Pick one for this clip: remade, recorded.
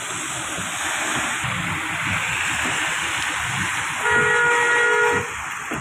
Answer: recorded